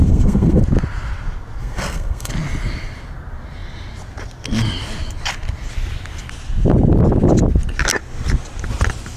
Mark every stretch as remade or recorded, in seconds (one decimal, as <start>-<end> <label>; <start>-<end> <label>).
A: 0.0-0.6 remade; 0.6-1.6 recorded; 1.6-2.3 remade; 2.3-9.2 recorded